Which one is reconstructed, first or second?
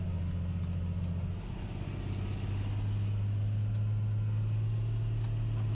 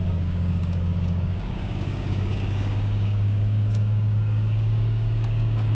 second